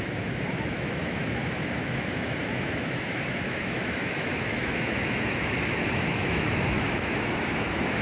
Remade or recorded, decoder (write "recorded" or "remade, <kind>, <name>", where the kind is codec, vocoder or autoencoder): remade, autoencoder, DAC-VAE